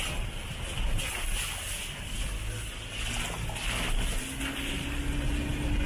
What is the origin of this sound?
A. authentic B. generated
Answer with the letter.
A